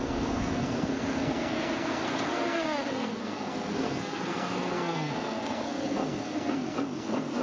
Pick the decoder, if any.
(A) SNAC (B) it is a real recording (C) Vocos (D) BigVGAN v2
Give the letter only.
A